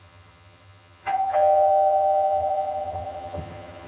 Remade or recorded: remade